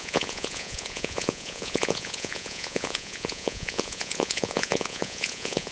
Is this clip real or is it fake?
fake